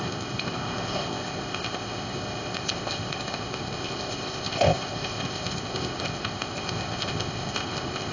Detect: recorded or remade remade